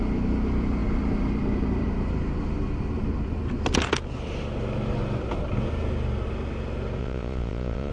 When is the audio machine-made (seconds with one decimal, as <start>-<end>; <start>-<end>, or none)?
7.0-7.9